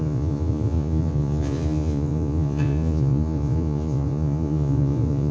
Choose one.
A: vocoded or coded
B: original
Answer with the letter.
A